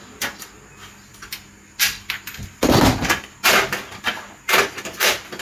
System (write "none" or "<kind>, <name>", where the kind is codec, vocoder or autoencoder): none